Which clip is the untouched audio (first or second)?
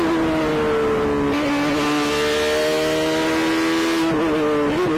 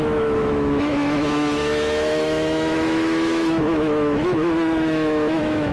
first